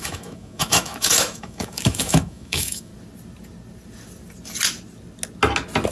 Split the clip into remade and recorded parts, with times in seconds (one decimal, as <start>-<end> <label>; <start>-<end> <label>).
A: 0.0-2.9 remade; 2.9-5.9 recorded